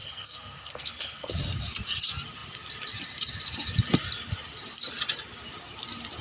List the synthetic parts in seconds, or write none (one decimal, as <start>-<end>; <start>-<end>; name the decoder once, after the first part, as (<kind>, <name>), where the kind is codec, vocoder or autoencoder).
0.0-1.3 (codec, SNAC)